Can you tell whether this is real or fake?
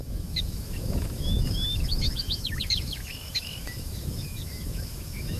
fake